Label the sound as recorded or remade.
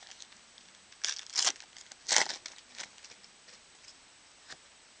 recorded